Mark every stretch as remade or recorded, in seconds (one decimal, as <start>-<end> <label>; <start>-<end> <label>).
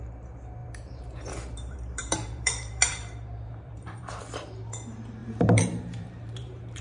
0.0-0.6 recorded; 0.6-4.2 remade; 4.2-5.2 recorded; 5.2-6.8 remade